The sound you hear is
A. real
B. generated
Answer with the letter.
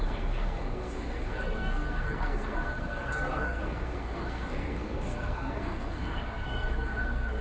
B